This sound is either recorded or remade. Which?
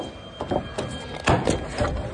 recorded